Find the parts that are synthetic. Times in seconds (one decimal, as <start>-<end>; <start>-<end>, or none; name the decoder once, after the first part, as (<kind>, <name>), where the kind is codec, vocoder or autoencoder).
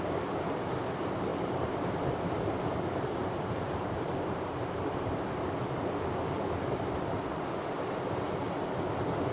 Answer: 1.3-4.6 (vocoder, BigVGAN v2)